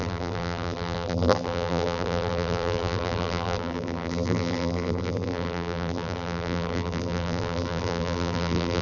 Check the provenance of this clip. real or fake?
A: fake